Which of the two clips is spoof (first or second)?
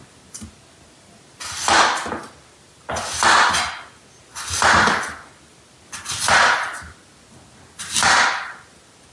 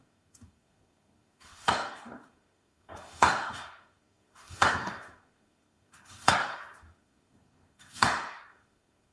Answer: second